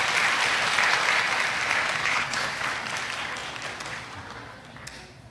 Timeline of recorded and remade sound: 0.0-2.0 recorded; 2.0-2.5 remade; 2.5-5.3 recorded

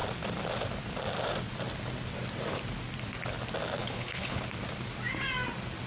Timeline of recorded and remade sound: 0.0-3.8 recorded; 3.8-4.4 remade; 4.4-5.9 recorded